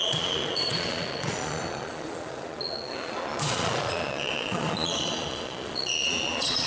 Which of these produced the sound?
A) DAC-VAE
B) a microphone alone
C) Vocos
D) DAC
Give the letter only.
C